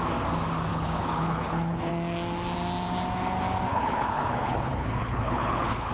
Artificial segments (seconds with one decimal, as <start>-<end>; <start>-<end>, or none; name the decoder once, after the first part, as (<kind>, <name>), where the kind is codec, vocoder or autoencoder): 0.7-1.9 (codec, HILCodec); 3.7-5.9